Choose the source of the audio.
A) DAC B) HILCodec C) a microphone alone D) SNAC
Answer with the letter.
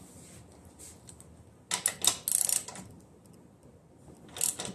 C